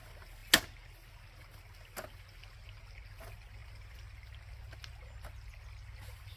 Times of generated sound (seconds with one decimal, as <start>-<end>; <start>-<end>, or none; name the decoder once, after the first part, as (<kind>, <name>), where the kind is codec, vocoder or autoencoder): none